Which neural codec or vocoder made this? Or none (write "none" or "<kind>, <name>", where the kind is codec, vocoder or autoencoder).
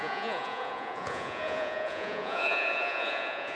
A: vocoder, Vocos